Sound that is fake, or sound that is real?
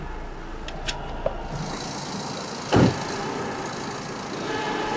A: real